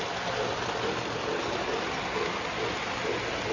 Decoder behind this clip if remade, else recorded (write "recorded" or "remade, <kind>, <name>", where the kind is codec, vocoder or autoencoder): recorded